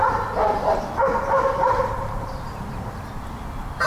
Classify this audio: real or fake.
real